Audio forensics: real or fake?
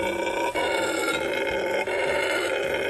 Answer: real